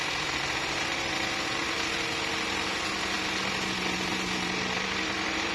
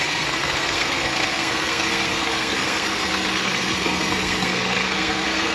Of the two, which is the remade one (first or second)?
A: second